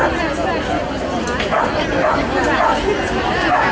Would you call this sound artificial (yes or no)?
no